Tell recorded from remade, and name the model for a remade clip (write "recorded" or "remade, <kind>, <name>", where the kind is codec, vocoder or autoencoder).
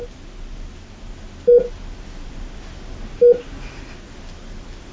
recorded